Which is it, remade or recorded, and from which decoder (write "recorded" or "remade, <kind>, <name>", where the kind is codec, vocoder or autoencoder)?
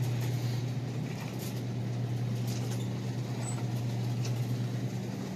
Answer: recorded